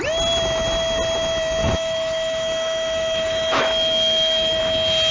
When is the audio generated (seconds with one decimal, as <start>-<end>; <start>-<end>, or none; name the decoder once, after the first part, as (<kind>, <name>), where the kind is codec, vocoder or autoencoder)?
1.6-4.6 (autoencoder, DAC-VAE)